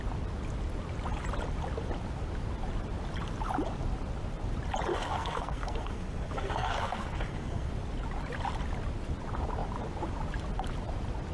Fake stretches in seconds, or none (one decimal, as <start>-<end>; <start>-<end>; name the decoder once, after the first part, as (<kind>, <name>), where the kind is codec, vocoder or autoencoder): 4.9-7.7 (codec, SNAC)